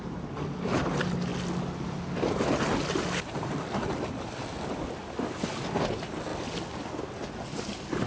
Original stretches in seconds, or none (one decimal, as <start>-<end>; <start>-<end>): 0.0-8.1